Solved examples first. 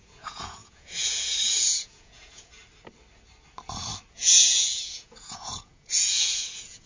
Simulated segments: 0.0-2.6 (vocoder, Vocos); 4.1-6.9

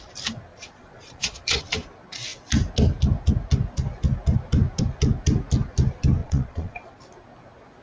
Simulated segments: 0.5-1.6 (vocoder, Vocos); 6.2-7.0

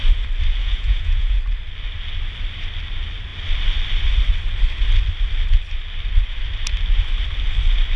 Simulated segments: 0.6-1.4 (vocoder, Vocos)

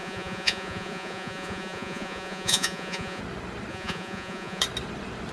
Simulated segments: 0.0-3.2 (vocoder, Vocos); 3.7-4.6